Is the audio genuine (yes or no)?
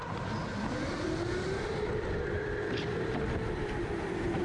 no